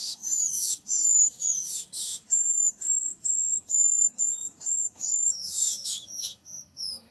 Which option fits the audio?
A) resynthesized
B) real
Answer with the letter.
A